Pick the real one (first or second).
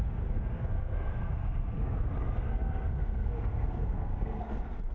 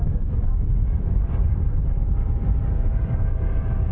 second